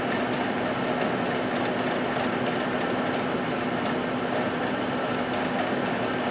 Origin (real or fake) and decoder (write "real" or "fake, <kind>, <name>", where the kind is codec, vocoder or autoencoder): real